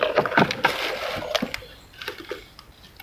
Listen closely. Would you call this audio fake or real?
real